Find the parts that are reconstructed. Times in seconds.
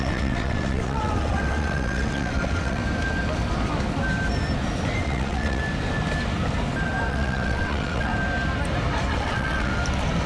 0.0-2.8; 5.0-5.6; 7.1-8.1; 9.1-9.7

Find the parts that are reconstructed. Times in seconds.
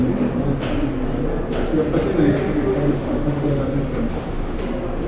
2.7-3.6; 4.1-4.6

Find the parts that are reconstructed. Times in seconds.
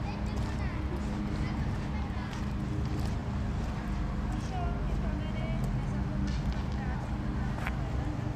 none